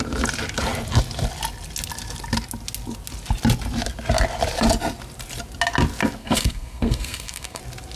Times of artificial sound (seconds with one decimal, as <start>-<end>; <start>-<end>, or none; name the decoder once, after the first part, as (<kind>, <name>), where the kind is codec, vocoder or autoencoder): 6.2-7.6 (codec, SNAC)